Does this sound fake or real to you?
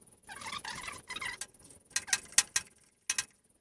real